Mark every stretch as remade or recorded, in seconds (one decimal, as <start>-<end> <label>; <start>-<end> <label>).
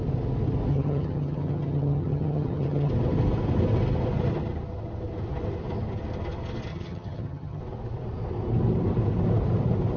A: 0.0-0.7 recorded; 0.7-2.9 remade; 2.9-6.7 recorded; 6.7-7.6 remade; 7.6-10.0 recorded